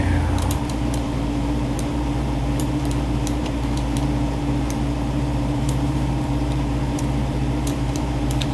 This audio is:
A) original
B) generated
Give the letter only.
B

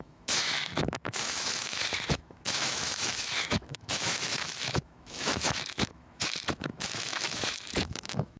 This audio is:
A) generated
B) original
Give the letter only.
A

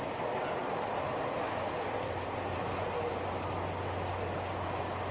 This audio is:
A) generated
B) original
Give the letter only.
B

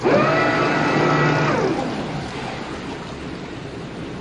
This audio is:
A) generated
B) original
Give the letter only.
B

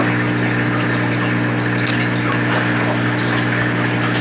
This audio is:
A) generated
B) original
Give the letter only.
B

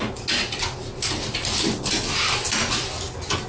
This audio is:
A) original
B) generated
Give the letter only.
A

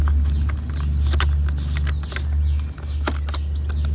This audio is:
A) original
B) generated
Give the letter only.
A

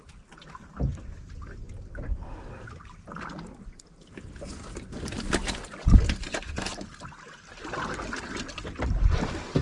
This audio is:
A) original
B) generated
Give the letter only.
A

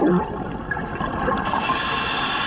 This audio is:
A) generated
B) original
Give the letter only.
B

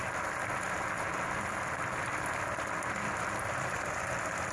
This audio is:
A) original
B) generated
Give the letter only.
A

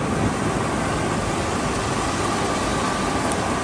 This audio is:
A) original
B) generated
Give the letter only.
A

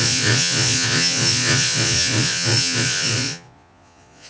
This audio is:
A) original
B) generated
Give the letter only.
B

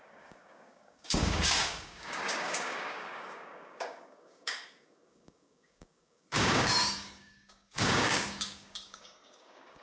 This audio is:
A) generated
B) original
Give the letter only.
A